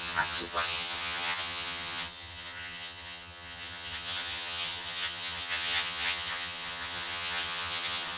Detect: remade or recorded remade